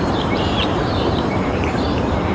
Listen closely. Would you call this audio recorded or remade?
remade